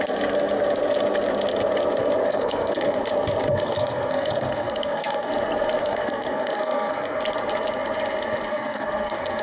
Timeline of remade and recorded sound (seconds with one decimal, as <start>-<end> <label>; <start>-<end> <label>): 0.0-2.3 recorded; 2.3-3.0 remade; 3.0-3.5 recorded; 3.5-5.3 remade; 5.3-5.8 recorded; 5.8-7.2 remade; 7.2-8.5 recorded; 8.5-9.4 remade

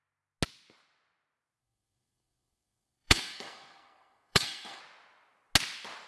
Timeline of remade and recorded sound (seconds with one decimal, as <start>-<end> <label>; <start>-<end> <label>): 0.0-1.6 recorded; 1.6-4.8 remade; 4.8-6.1 recorded

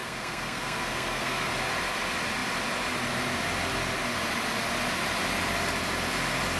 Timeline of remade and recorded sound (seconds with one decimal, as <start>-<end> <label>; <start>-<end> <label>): 0.0-1.5 remade; 1.5-6.6 recorded